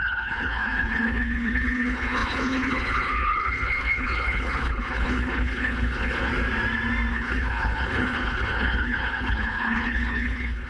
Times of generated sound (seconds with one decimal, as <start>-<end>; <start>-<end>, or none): 0.0-6.3; 7.1-10.7